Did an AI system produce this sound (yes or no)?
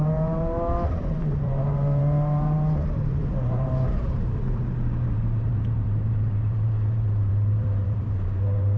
yes